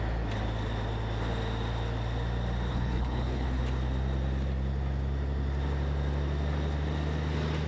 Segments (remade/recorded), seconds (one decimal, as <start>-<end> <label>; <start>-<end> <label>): 0.0-2.7 recorded; 2.7-3.6 remade; 3.6-7.7 recorded